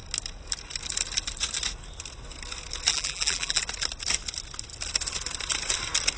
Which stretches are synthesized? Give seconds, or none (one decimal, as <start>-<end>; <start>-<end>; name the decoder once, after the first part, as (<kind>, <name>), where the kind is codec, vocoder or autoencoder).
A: 2.9-3.6 (vocoder, BigVGAN v2)